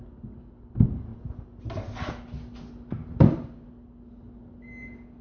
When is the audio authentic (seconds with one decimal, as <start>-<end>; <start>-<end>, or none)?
0.0-5.2